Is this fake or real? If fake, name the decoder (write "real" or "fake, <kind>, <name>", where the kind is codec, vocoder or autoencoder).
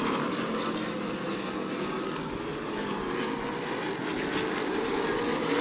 real